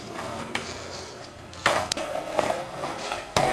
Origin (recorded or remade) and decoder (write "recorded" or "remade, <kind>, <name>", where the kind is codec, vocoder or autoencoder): remade, codec, SNAC